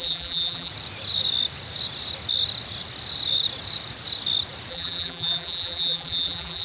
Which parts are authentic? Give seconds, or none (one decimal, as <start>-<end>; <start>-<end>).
0.7-4.7